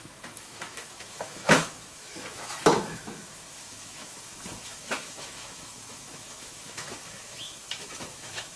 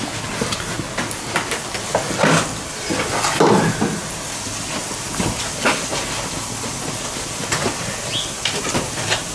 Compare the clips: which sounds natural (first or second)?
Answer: second